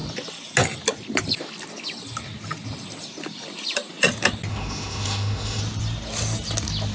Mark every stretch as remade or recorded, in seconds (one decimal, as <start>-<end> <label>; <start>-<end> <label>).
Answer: 0.0-4.5 recorded; 4.5-5.6 remade; 5.6-6.9 recorded